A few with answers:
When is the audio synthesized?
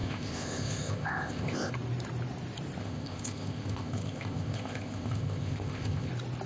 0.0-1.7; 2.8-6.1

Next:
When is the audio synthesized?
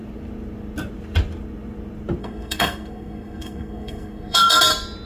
2.2-4.6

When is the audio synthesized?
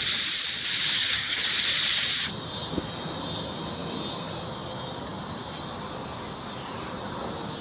1.0-1.5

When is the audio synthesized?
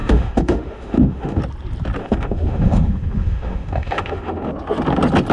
0.0-1.4; 2.0-4.5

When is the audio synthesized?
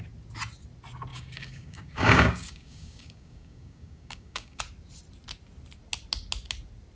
1.1-4.6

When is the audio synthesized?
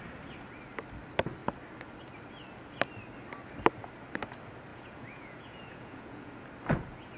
4.7-6.3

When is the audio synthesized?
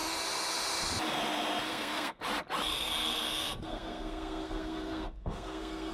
1.7-2.2; 2.7-5.9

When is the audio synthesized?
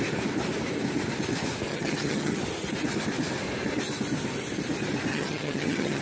1.7-2.4; 5.1-6.0